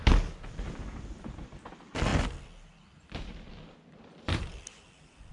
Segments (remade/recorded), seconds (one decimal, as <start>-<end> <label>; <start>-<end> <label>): 0.0-5.3 recorded

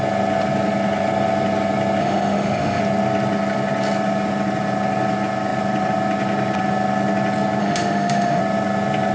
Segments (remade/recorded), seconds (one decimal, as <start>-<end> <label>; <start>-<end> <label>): 0.0-2.0 recorded; 2.0-2.8 remade; 2.8-7.6 recorded; 7.6-8.4 remade; 8.4-9.1 recorded

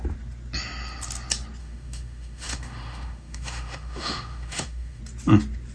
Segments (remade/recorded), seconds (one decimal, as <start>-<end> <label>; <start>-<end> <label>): 0.0-1.6 recorded; 1.6-5.0 remade; 5.0-5.7 recorded

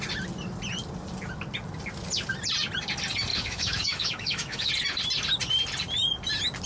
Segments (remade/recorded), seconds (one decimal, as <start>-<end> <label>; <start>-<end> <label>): 0.0-3.3 recorded; 3.3-4.7 remade; 4.7-6.7 recorded

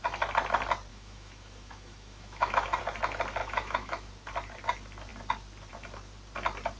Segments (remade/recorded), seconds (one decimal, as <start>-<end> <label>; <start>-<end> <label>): 0.0-0.9 recorded; 0.9-2.8 remade; 2.8-3.4 recorded; 3.4-4.1 remade; 4.1-6.8 recorded

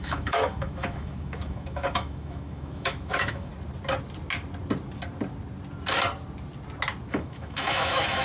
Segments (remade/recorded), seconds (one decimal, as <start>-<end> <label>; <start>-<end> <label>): 0.0-3.5 remade; 3.5-7.1 recorded; 7.1-8.2 remade

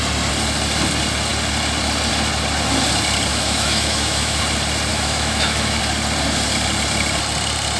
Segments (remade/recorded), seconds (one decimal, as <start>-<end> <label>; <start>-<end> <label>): 0.0-3.3 recorded; 3.3-4.4 remade; 4.4-4.9 recorded; 4.9-5.8 remade; 5.8-7.8 recorded